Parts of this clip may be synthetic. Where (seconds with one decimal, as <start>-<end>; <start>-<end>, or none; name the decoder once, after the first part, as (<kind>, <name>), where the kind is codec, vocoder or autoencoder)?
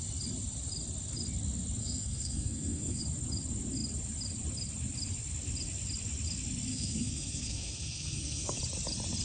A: 1.8-3.0 (codec, SNAC); 6.7-8.6